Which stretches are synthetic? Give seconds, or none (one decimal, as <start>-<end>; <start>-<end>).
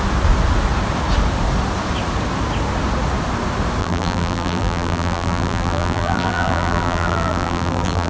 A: 3.8-8.1